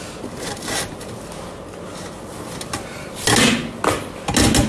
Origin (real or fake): real